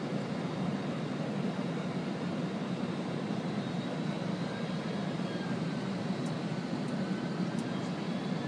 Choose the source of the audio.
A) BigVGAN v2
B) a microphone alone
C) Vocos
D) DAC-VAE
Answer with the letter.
A